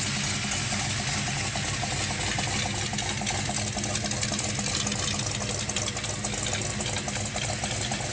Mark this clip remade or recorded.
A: recorded